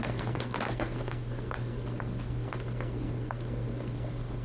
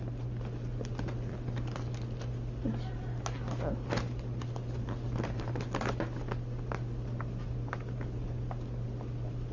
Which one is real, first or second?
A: second